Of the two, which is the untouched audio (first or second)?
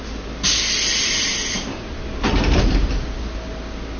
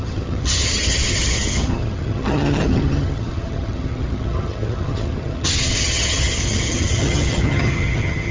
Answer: first